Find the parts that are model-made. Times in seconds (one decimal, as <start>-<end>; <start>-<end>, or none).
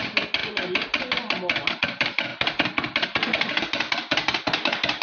none